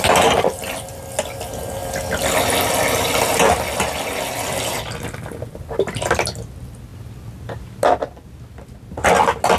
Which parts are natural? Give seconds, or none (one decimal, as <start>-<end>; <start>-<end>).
0.0-9.6